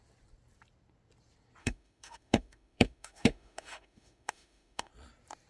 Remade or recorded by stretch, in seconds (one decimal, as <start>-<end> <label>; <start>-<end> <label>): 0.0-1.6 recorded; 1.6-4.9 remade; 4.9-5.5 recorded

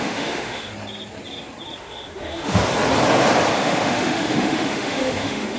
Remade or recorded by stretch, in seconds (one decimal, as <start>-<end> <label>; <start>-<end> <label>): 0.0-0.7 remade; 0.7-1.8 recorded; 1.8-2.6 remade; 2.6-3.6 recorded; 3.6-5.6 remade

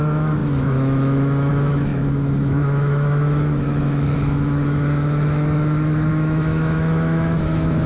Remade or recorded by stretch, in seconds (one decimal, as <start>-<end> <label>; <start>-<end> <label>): 0.0-7.9 remade

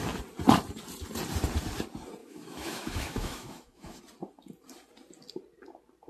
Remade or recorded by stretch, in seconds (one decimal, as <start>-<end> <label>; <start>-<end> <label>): 0.0-2.2 recorded; 2.2-4.0 remade; 4.0-6.1 recorded

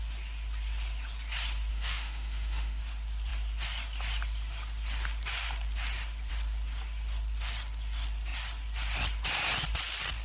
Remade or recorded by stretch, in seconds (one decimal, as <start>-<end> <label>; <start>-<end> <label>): 0.0-1.7 recorded; 1.7-2.8 remade; 2.8-10.2 recorded